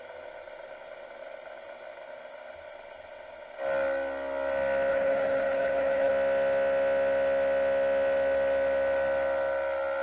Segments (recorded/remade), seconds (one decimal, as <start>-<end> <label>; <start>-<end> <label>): 0.0-4.9 recorded; 4.9-6.1 remade; 6.1-10.0 recorded